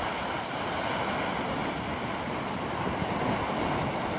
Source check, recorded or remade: recorded